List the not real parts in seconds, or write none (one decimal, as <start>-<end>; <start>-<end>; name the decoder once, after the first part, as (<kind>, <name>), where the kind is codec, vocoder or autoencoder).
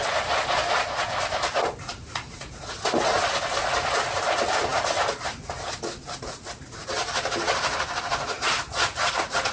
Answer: none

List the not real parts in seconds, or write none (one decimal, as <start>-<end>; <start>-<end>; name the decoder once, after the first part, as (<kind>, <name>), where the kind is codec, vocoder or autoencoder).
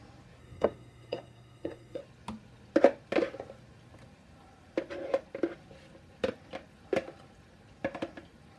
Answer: 0.4-2.0 (codec, SNAC)